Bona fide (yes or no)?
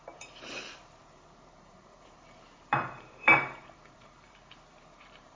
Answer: no